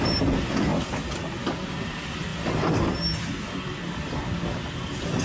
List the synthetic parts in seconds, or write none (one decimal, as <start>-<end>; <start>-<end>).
none